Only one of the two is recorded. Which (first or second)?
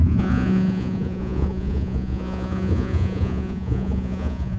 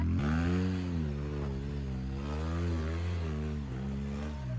second